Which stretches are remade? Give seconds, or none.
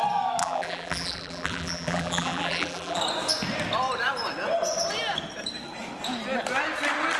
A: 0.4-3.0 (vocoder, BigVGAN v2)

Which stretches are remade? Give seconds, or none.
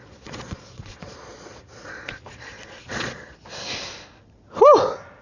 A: 0.0-3.4 (vocoder, Vocos)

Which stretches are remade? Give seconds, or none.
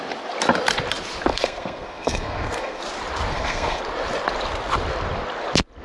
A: 1.3-2.8 (codec, SNAC); 3.3-3.8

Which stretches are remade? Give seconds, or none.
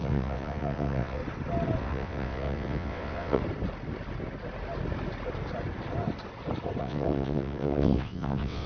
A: 0.0-1.2 (vocoder, WaveNeXt); 1.8-3.4; 6.8-8.7